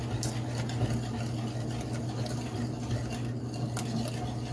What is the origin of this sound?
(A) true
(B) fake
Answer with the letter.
A